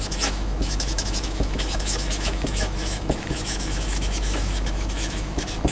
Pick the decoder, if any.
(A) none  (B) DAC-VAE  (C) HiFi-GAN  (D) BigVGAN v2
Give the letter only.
B